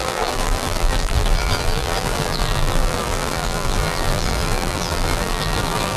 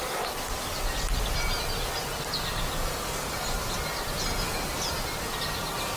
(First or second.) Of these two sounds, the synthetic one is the first